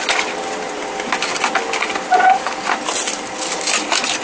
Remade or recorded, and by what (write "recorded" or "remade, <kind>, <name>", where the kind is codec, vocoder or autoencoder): recorded